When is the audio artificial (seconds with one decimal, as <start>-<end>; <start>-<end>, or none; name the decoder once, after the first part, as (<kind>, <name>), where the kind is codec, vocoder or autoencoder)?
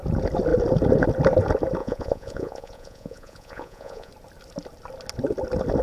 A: 1.8-4.1 (vocoder, Vocos)